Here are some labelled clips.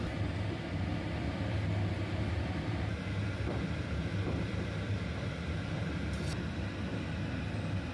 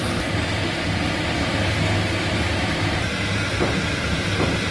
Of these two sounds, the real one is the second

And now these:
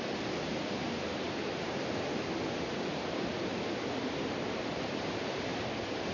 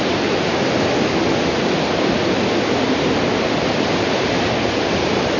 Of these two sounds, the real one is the second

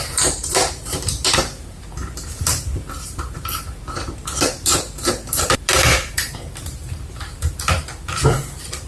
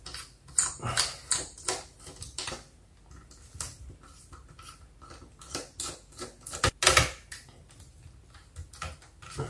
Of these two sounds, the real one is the second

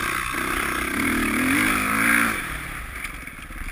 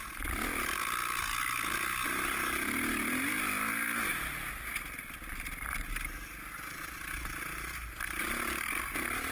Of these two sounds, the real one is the second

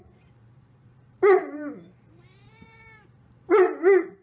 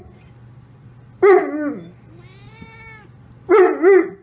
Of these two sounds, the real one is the second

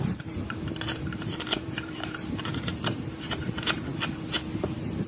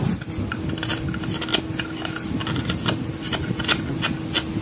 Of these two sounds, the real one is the second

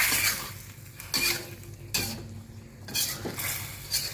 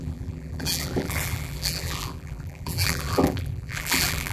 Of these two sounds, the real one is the first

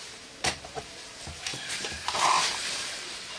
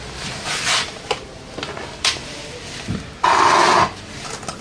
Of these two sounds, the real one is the second